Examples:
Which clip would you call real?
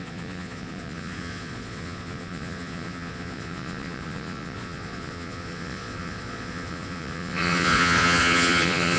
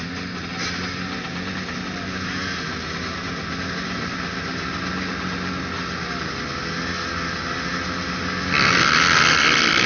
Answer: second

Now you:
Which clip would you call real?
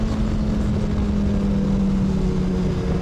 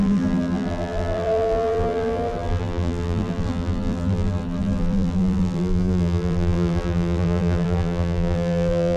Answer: first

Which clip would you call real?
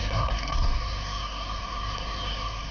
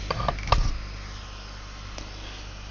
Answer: second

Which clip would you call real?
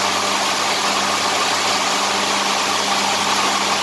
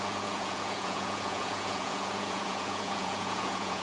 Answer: first